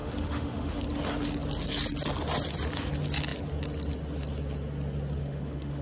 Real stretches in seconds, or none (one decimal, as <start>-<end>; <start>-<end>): 0.8-5.2